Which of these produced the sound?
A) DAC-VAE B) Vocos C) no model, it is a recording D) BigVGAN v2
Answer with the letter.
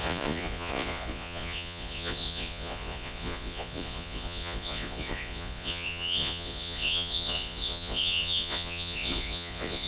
B